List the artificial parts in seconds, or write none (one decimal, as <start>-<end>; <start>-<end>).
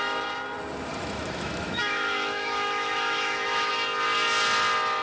0.9-3.7